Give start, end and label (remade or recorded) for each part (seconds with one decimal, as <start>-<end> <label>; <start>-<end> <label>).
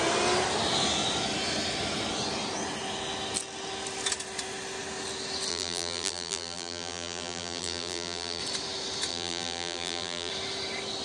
0.0-5.5 recorded; 5.5-8.4 remade; 8.4-9.1 recorded; 9.1-10.3 remade; 10.3-11.0 recorded